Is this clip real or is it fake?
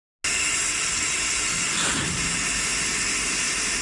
real